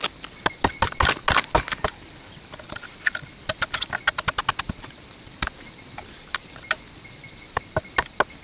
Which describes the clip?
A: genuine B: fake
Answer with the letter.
A